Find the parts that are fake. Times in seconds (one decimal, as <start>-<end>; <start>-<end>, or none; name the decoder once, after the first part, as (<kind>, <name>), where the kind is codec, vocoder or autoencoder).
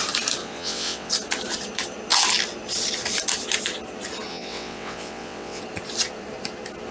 0.4-1.1 (vocoder, WaveNeXt); 4.3-5.6